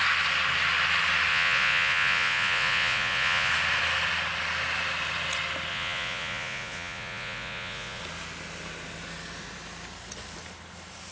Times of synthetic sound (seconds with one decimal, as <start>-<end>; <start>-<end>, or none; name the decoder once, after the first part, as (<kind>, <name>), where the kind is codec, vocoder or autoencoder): 1.3-3.5 (vocoder, Vocos); 5.7-8.0